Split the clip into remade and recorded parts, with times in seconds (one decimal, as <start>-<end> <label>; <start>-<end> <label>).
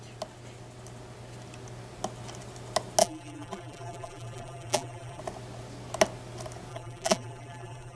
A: 0.0-3.0 recorded; 3.0-5.2 remade; 5.2-6.7 recorded; 6.7-8.0 remade